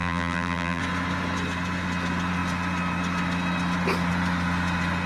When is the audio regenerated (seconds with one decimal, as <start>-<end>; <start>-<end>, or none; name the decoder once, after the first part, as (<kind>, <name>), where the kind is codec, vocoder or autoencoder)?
0.0-0.8 (vocoder, BigVGAN v2)